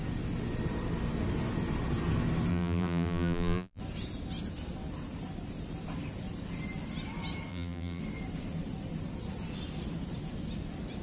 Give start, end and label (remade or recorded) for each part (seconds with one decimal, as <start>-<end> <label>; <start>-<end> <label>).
0.0-2.5 recorded; 2.5-3.8 remade; 3.8-7.5 recorded; 7.5-8.0 remade; 8.0-11.0 recorded